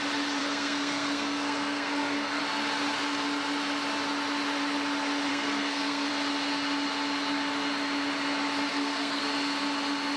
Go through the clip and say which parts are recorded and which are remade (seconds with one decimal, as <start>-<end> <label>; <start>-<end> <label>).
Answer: 0.0-0.4 recorded; 0.4-2.4 remade; 2.4-5.3 recorded; 5.3-6.1 remade; 6.1-8.7 recorded; 8.7-9.2 remade; 9.2-10.2 recorded